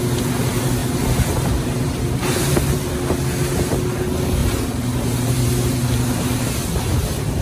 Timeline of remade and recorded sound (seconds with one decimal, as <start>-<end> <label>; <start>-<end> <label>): 0.0-0.8 recorded; 0.8-2.5 remade; 2.5-4.4 recorded; 4.4-6.4 remade; 6.4-7.4 recorded